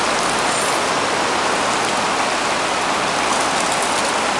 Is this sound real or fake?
real